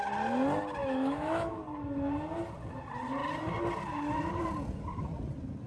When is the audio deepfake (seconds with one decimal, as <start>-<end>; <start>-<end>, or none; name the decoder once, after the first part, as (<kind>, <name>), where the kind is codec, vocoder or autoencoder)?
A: 0.8-1.6 (autoencoder, DAC-VAE)